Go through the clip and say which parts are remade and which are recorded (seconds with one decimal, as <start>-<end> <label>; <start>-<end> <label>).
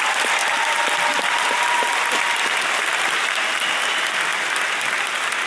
0.0-0.4 remade; 0.4-3.7 recorded; 3.7-4.3 remade; 4.3-5.5 recorded